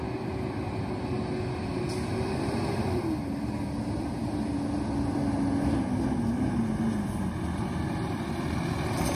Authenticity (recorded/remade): recorded